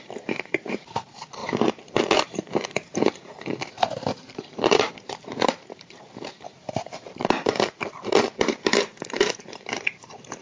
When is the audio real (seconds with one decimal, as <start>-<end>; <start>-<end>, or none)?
none